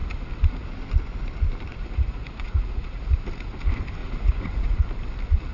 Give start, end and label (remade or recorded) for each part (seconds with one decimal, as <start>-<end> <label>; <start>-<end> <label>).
0.0-1.7 recorded; 1.7-3.0 remade; 3.0-4.0 recorded; 4.0-4.8 remade; 4.8-5.5 recorded